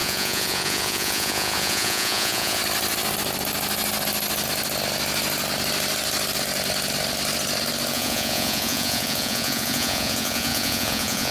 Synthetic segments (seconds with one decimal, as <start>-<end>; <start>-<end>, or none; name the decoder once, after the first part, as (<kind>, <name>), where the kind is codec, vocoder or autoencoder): 0.0-2.6 (vocoder, Vocos); 7.9-11.3